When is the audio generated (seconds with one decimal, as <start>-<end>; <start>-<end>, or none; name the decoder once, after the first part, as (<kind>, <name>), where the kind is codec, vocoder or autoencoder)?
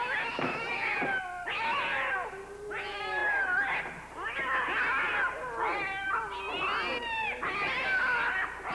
none